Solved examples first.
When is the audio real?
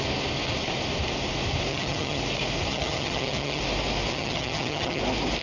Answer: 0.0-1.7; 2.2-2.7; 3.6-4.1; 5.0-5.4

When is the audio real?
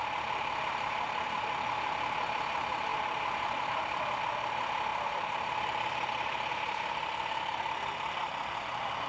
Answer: 0.7-2.9; 4.2-4.9; 6.3-9.1